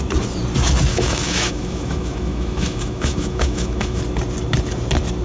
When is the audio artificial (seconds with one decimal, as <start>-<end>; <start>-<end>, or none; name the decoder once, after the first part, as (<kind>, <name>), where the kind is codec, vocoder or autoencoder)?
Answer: 0.9-4.0 (autoencoder, DAC-VAE)